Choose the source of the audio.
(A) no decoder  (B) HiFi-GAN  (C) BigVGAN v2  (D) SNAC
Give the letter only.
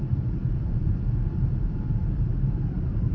C